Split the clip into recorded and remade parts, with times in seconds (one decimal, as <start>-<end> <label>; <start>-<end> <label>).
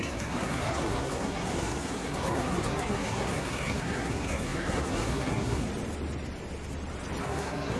0.0-5.7 remade; 5.7-7.2 recorded; 7.2-7.8 remade